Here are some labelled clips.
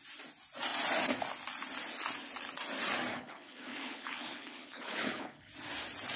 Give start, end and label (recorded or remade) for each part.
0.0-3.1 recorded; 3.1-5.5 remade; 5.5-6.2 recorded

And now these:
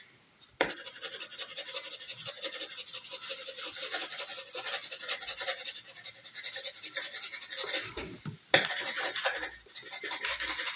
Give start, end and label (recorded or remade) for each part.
0.0-10.8 recorded